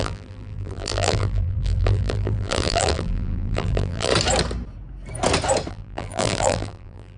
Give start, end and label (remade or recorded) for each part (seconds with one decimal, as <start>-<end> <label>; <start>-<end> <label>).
0.0-4.1 remade; 4.1-5.7 recorded; 5.7-7.2 remade